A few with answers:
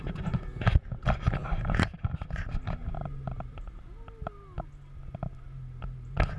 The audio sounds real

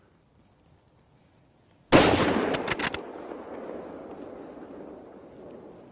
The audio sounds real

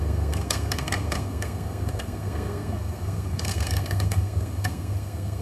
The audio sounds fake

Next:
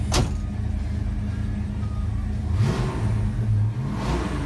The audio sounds real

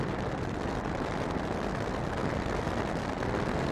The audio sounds real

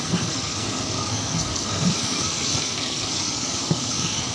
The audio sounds fake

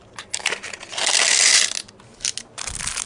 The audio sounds real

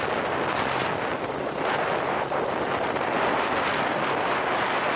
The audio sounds real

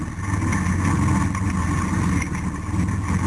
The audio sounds real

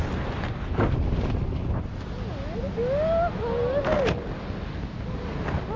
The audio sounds real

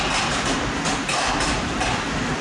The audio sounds real